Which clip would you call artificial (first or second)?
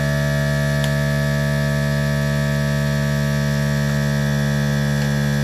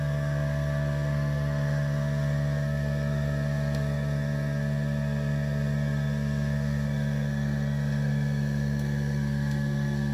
second